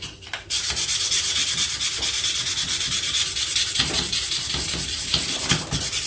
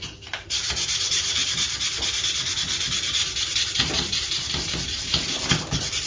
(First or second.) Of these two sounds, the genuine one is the first